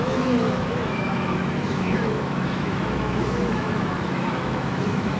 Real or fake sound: fake